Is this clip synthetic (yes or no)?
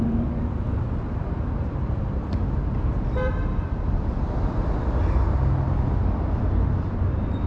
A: no